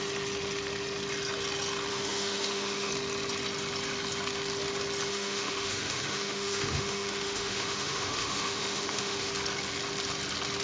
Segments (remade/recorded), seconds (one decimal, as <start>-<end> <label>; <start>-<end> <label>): 0.0-1.9 recorded; 1.9-2.9 remade; 2.9-5.1 recorded; 5.1-9.3 remade; 9.3-10.6 recorded